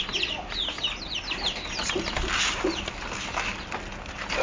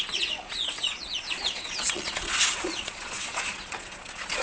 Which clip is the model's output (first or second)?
second